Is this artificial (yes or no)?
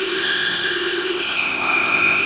yes